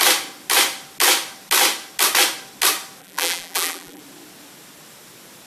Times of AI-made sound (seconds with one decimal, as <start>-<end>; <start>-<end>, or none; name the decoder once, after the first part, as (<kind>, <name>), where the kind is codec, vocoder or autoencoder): 3.0-4.0 (vocoder, BigVGAN v2)